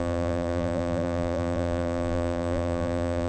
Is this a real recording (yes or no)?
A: no